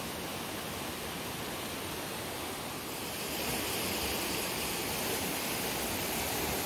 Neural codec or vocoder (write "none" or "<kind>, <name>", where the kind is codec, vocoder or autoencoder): none